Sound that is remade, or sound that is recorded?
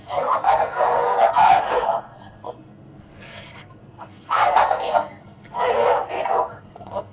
remade